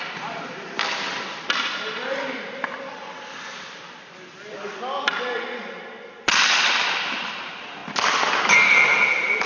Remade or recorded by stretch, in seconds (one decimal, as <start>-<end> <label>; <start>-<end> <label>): 0.0-7.8 remade; 7.8-9.1 recorded; 9.1-9.5 remade